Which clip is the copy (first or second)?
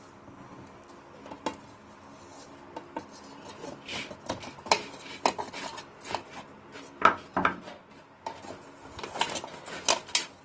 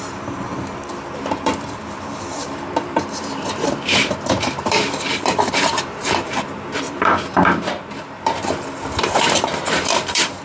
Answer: second